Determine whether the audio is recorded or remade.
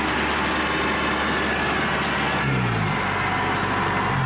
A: recorded